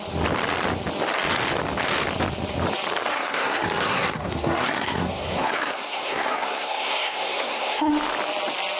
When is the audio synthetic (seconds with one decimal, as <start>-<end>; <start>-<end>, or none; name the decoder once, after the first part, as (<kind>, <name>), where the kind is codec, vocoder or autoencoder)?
3.1-7.9 (codec, SNAC)